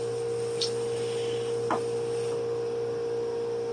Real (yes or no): yes